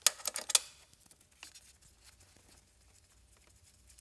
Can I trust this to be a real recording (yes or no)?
yes